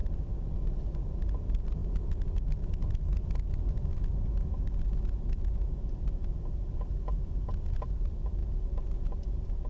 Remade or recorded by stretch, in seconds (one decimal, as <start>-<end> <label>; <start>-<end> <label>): 0.0-9.7 recorded